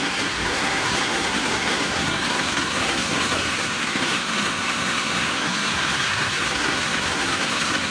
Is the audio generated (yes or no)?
yes